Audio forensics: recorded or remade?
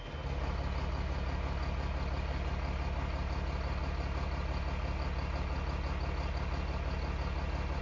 recorded